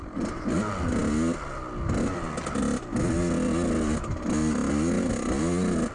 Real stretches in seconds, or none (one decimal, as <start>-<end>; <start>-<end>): 0.0-5.9